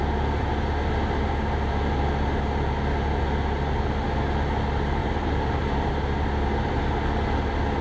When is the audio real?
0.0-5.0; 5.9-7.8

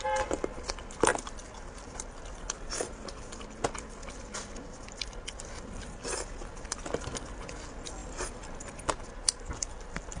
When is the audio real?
0.0-10.2